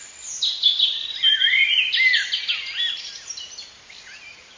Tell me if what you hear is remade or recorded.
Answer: remade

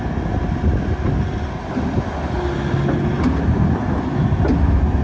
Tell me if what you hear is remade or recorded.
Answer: recorded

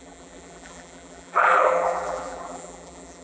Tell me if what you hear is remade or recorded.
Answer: remade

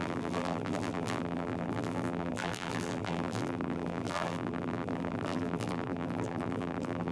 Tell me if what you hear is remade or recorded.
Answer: remade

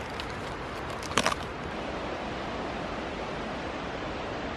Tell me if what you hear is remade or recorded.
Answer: recorded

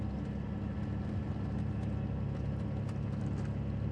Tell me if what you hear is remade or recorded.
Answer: recorded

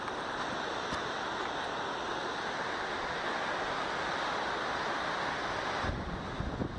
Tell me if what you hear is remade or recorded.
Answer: recorded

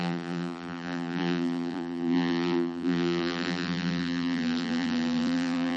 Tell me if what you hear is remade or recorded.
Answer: remade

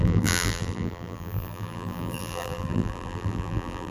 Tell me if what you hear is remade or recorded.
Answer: remade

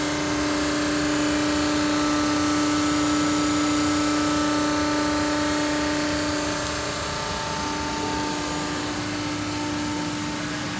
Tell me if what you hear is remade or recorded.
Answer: recorded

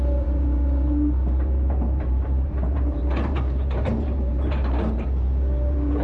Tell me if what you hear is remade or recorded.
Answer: remade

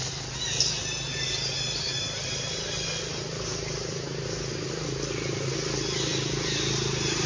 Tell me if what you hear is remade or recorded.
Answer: recorded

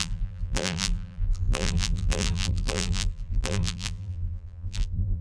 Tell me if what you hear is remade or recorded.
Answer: remade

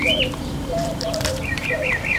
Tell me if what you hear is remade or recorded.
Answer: remade